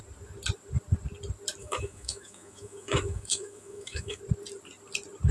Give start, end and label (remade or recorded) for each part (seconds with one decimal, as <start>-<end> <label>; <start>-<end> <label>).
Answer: 0.0-1.6 recorded; 1.6-4.2 remade; 4.2-5.3 recorded